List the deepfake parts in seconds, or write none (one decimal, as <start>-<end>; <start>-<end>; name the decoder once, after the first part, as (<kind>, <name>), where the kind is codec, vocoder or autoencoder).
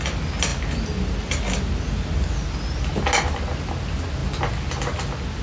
none